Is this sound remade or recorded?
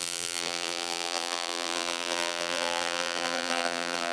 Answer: remade